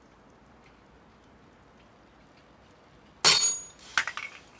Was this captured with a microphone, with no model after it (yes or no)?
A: yes